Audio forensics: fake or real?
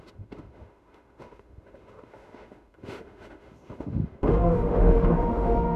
fake